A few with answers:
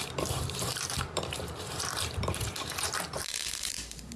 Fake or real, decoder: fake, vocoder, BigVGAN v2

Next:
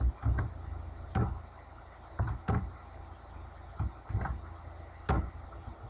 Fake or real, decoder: real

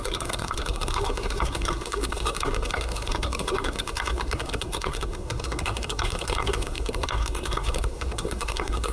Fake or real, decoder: fake, codec, SNAC